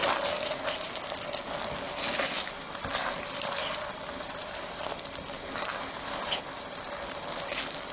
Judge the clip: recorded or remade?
recorded